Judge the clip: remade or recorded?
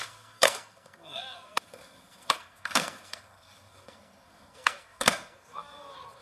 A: remade